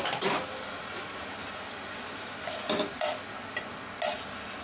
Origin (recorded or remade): recorded